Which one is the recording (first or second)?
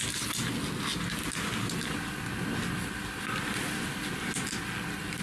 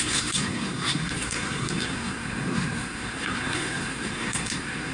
first